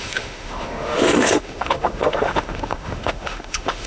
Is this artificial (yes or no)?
yes